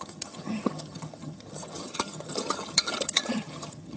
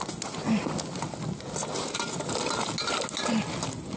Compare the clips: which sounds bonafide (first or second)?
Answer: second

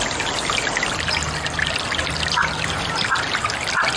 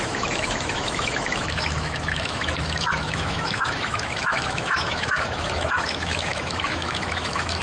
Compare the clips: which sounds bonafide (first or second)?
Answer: first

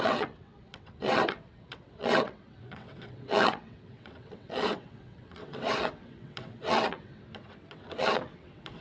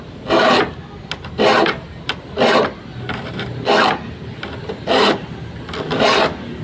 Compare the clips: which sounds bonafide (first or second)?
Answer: second